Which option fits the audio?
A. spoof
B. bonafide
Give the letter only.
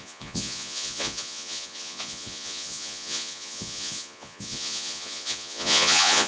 A